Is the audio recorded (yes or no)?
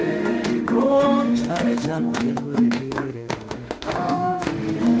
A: no